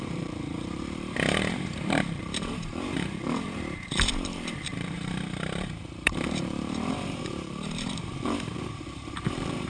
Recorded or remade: remade